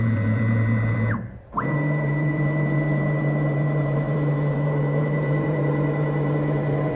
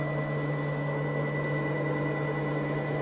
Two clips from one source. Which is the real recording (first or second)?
second